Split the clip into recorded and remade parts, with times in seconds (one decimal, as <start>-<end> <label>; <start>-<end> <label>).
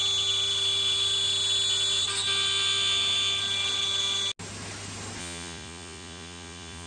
0.0-5.2 recorded; 5.2-6.9 remade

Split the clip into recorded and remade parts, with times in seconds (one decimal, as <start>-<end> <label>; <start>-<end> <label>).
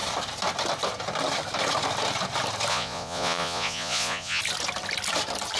0.0-2.7 recorded; 2.7-4.4 remade; 4.4-5.6 recorded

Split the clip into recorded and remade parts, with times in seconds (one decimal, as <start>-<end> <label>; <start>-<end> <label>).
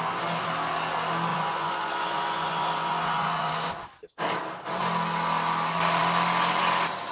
0.0-1.3 recorded; 1.3-3.7 remade; 3.7-7.1 recorded